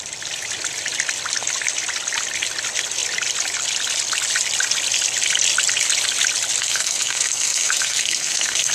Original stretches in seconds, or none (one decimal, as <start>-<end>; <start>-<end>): 0.0-6.6